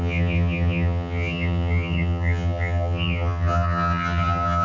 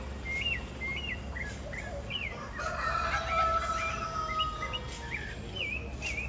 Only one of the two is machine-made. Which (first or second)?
first